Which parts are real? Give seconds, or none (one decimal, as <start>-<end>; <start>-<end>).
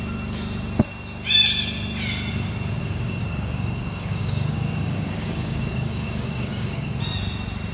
0.0-2.8; 7.0-7.7